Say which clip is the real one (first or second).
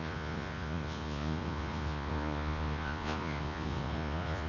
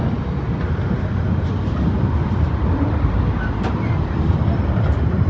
second